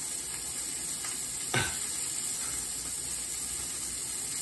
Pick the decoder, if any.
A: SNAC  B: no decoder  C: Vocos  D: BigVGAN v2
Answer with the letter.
B